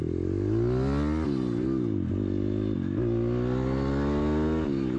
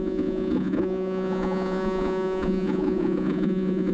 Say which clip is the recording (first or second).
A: first